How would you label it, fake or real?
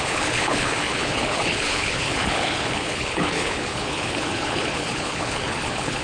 fake